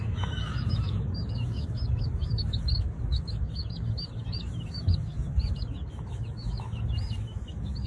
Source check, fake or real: fake